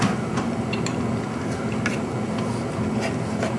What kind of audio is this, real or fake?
real